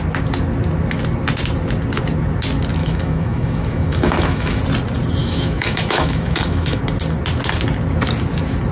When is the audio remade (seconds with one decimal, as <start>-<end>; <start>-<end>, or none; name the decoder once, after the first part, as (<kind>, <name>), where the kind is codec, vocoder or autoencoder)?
2.8-4.6 (autoencoder, DAC-VAE); 5.2-6.8